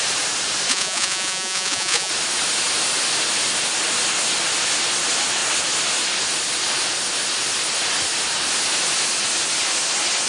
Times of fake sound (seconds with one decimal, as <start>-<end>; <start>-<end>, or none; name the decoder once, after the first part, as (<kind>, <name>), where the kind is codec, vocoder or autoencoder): 0.7-2.1 (vocoder, Vocos)